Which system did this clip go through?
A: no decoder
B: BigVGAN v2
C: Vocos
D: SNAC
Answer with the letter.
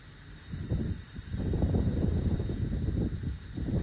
B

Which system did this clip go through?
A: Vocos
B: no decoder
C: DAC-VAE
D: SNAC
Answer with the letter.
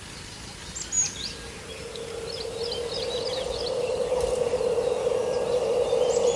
B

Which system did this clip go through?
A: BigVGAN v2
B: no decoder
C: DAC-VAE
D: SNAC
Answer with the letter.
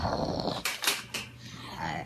B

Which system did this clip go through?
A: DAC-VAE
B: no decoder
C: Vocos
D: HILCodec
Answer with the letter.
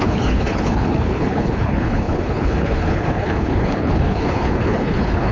D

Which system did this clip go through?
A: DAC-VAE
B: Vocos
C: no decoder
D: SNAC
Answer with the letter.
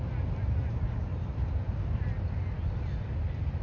C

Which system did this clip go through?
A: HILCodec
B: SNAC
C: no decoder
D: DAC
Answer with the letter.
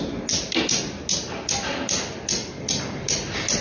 C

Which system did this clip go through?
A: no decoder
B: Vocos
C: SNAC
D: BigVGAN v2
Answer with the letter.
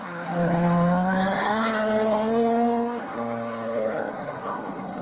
C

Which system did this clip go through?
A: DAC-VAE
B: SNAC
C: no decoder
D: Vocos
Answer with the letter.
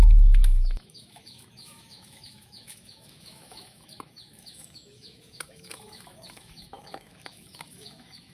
A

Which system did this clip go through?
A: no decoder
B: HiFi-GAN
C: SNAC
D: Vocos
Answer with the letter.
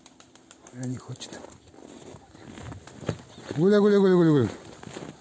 A